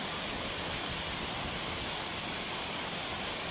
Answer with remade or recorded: recorded